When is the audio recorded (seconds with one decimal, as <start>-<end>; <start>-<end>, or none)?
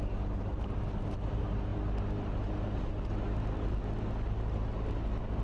0.0-5.4